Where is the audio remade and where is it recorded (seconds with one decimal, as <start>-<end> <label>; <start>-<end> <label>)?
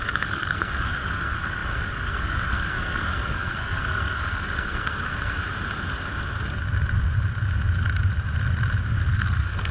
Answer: 0.0-5.4 remade; 5.4-9.1 recorded; 9.1-9.7 remade